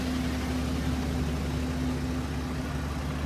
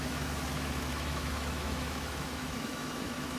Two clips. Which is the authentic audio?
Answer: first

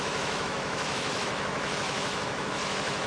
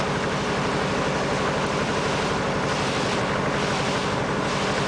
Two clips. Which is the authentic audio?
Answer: second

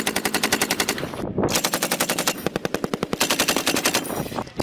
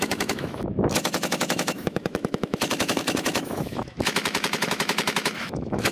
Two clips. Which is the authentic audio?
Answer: first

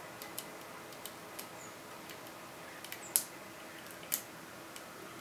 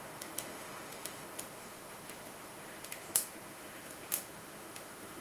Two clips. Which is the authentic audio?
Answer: first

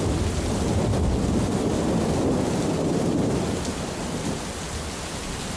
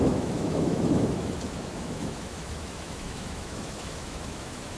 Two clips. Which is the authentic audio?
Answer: first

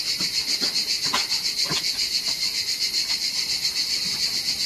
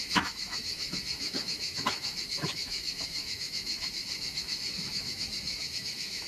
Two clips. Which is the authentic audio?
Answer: first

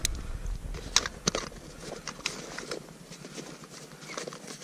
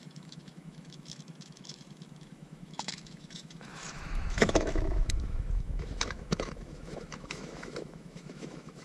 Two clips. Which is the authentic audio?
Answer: first